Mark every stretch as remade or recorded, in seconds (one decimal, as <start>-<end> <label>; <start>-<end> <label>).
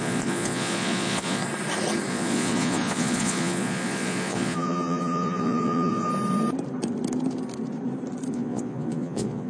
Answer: 0.0-1.4 remade; 1.4-2.1 recorded; 2.1-6.1 remade; 6.1-8.3 recorded; 8.3-9.5 remade